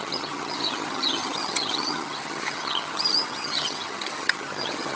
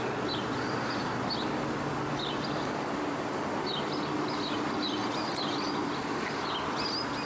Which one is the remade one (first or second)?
first